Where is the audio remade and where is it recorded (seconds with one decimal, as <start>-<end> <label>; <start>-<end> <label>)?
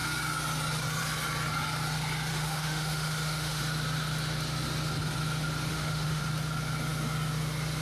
0.0-2.3 recorded; 2.3-3.6 remade; 3.6-5.7 recorded; 5.7-6.2 remade; 6.2-7.8 recorded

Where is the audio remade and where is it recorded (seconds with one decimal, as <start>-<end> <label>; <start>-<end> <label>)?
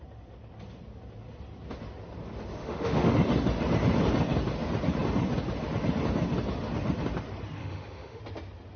0.0-2.6 recorded; 2.6-3.1 remade; 3.1-7.6 recorded; 7.6-8.2 remade; 8.2-8.8 recorded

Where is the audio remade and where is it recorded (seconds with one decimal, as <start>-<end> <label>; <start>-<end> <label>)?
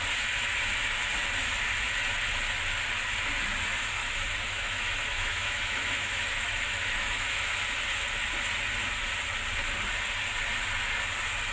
0.0-4.0 recorded; 4.0-7.5 remade; 7.5-11.5 recorded